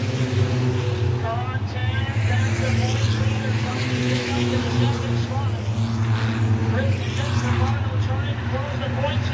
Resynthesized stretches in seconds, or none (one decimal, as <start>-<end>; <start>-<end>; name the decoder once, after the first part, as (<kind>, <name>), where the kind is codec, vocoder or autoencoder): 4.0-4.6 (autoencoder, DAC-VAE)